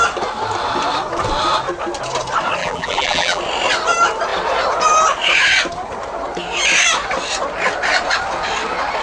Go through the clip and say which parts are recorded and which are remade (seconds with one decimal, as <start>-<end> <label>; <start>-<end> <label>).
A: 0.0-2.6 recorded; 2.6-3.4 remade; 3.4-9.0 recorded